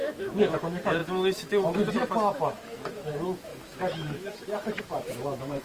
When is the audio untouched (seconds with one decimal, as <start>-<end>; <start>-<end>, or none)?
none